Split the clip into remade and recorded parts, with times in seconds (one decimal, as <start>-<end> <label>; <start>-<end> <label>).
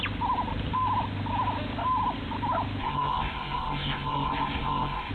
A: 0.0-2.8 recorded; 2.8-5.1 remade